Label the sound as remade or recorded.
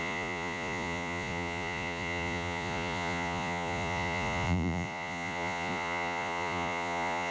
remade